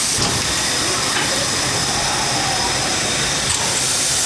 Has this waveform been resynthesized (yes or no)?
yes